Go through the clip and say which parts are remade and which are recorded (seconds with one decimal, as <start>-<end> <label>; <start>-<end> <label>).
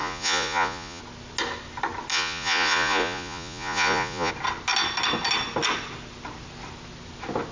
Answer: 0.0-1.0 remade; 1.0-2.1 recorded; 2.1-4.3 remade; 4.3-7.5 recorded